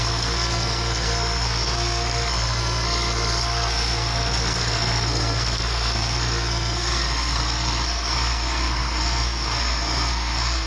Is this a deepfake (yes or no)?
yes